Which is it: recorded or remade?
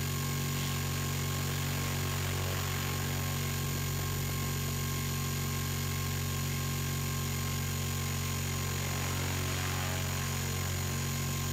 recorded